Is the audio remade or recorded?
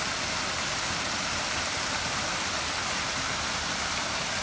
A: recorded